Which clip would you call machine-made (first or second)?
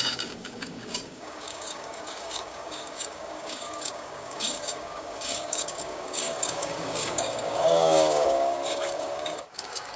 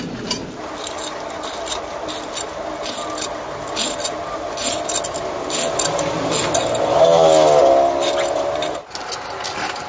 first